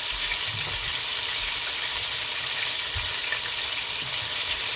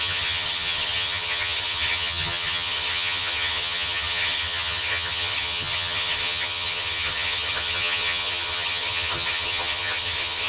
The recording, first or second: first